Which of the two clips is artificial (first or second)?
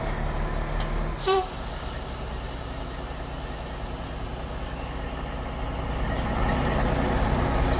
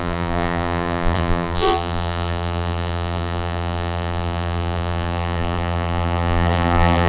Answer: second